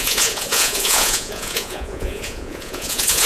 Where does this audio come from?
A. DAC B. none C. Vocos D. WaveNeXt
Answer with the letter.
C